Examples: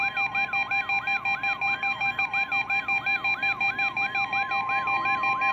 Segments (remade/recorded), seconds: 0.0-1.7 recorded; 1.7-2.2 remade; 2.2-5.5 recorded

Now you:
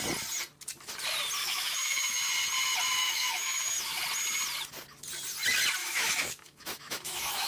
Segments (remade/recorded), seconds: 0.0-1.4 recorded; 1.4-2.2 remade; 2.2-3.0 recorded; 3.0-4.0 remade; 4.0-5.8 recorded; 5.8-7.5 remade

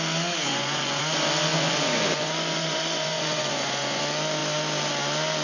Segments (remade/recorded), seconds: 0.0-0.5 recorded; 0.5-1.0 remade; 1.0-1.5 recorded; 1.5-4.0 remade; 4.0-5.4 recorded

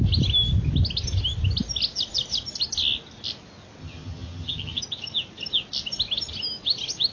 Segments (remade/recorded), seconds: 0.0-3.8 recorded; 3.8-4.8 remade; 4.8-7.1 recorded

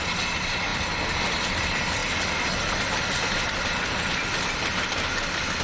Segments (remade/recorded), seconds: 0.0-5.6 recorded